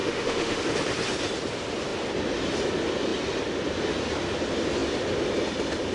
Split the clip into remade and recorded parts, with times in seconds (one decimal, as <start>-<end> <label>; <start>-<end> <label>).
0.0-0.6 remade; 0.6-5.9 recorded

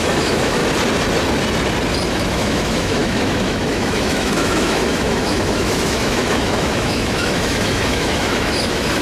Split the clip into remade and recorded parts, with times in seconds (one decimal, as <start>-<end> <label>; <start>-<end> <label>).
0.0-0.6 remade; 0.6-2.1 recorded; 2.1-9.0 remade

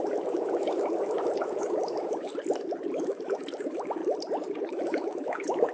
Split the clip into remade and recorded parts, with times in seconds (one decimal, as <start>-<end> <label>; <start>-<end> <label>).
0.0-2.3 remade; 2.3-3.0 recorded; 3.0-4.0 remade; 4.0-4.6 recorded; 4.6-5.7 remade

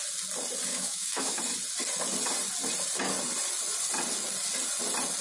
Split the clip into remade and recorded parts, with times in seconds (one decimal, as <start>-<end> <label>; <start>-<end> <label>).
0.0-0.7 recorded; 0.7-1.4 remade; 1.4-5.2 recorded

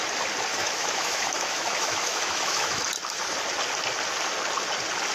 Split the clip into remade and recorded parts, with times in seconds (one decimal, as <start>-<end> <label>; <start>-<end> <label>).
0.0-0.5 recorded; 0.5-2.8 remade; 2.8-5.1 recorded